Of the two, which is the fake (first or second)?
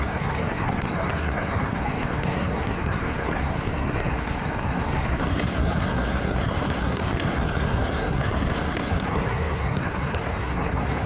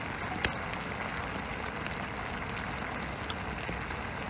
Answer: first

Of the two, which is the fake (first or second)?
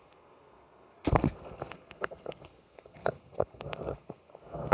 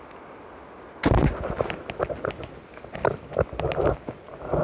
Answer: first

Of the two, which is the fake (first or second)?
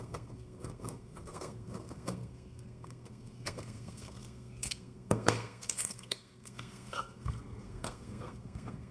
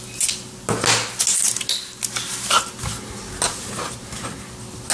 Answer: first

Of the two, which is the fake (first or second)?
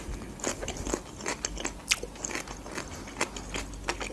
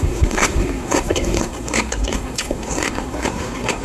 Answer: second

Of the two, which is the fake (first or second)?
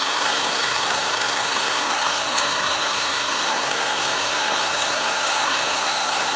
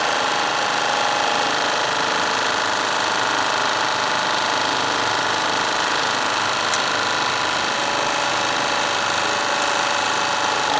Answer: first